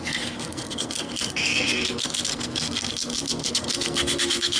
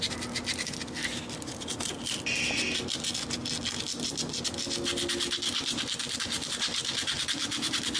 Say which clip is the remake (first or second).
first